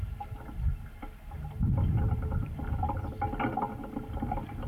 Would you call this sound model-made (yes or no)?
no